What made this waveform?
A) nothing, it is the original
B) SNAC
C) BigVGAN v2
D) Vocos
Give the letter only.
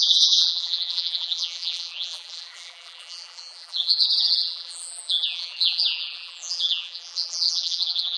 C